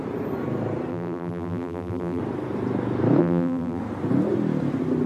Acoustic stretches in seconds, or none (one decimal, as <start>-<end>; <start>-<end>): 0.0-0.9; 2.2-3.2; 3.8-5.1